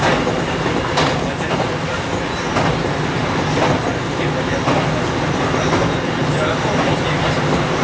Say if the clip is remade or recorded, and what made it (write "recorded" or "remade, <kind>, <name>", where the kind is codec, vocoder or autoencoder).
recorded